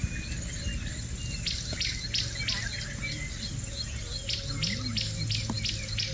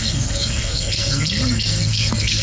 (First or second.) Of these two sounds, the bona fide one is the first